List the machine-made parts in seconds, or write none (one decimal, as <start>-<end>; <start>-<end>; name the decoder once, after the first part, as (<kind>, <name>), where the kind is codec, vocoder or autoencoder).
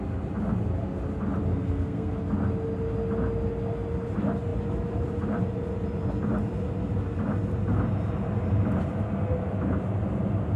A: 1.5-2.1 (codec, SNAC)